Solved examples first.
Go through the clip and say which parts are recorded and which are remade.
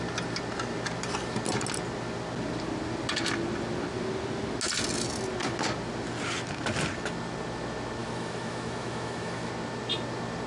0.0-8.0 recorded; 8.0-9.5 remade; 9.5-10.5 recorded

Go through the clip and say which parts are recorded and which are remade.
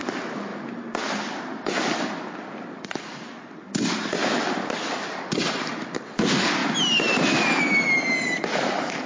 0.0-1.5 recorded; 1.5-5.7 remade; 5.7-6.6 recorded; 6.6-7.6 remade; 7.6-9.1 recorded